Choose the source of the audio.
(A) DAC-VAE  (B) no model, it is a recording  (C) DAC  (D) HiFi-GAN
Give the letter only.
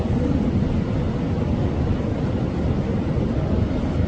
B